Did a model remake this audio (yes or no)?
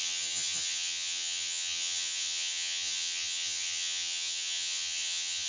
yes